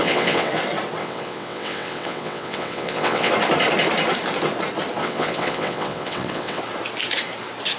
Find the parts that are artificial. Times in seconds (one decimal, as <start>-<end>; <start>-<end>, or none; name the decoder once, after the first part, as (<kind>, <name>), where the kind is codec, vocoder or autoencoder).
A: 0.0-0.5 (vocoder, WaveNeXt); 1.0-3.3; 5.0-6.6